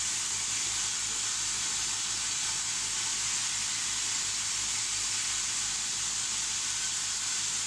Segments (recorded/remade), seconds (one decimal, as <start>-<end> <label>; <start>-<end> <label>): 0.0-7.7 recorded